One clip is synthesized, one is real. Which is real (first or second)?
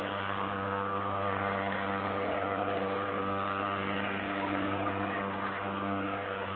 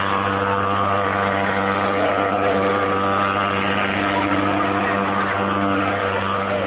second